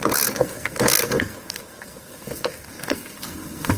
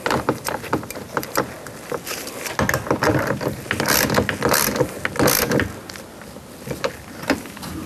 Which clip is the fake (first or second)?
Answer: first